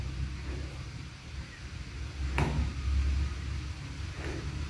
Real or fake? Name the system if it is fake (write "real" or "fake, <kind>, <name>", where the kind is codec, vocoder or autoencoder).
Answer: real